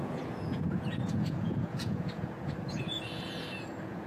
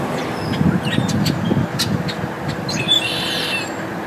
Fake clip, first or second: first